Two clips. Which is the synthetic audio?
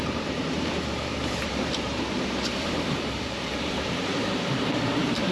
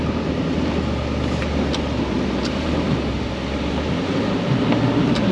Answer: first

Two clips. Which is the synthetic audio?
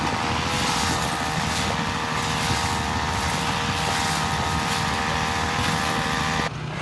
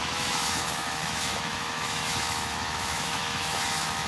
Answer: second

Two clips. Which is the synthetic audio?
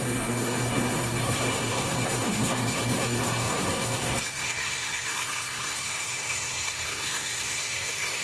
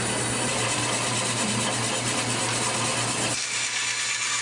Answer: first